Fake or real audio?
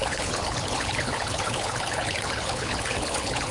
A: fake